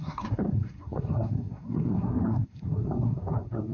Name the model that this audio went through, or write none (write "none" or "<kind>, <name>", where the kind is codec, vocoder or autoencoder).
codec, SNAC